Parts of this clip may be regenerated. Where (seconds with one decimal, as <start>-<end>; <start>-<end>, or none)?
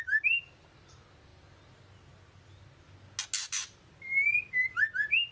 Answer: none